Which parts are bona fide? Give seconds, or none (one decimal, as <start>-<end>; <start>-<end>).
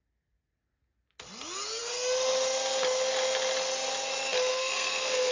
0.0-4.5